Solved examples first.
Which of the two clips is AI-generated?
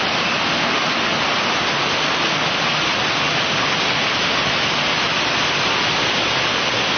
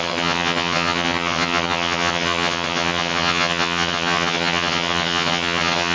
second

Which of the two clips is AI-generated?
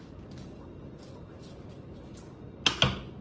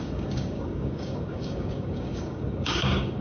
second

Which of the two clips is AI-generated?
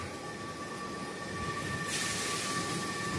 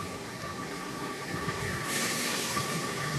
second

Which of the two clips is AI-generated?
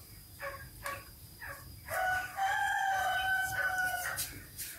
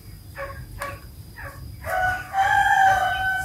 first